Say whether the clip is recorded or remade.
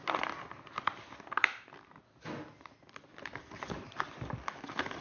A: recorded